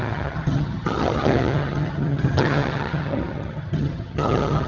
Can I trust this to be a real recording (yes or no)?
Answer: no